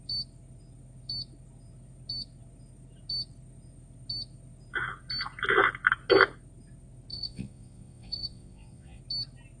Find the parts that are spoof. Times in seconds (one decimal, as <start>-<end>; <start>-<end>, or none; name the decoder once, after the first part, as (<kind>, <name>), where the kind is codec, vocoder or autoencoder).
7.1-9.0 (vocoder, Vocos)